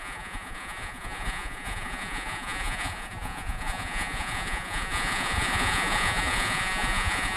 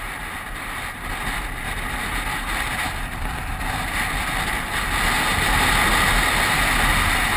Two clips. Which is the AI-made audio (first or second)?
first